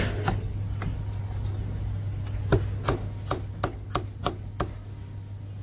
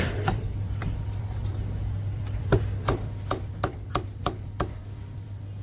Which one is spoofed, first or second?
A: second